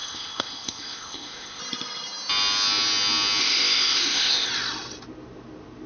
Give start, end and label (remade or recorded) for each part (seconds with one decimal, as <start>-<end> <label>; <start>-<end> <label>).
0.0-1.6 remade; 1.6-3.4 recorded; 3.4-4.5 remade; 4.5-5.9 recorded